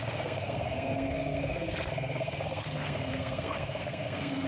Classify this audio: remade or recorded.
remade